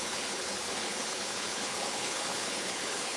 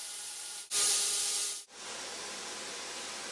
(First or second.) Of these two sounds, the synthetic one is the first